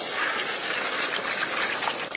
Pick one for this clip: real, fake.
real